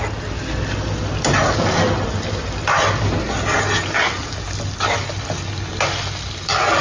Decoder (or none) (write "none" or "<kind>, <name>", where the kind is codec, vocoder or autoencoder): none